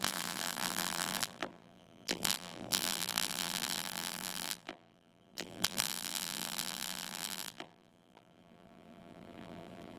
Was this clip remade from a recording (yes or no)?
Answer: yes